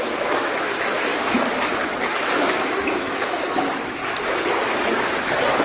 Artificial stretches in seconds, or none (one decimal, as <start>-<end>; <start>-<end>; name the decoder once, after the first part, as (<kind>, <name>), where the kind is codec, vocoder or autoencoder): 0.0-1.1 (autoencoder, DAC-VAE); 2.1-4.0